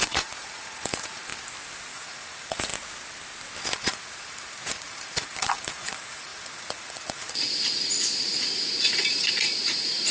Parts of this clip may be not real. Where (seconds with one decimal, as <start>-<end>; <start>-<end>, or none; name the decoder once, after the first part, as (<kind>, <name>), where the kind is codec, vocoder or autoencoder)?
0.0-1.3 (vocoder, Vocos); 1.9-2.7; 3.6-10.1